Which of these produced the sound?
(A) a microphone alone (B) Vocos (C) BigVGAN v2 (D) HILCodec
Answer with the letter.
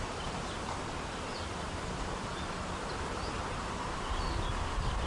A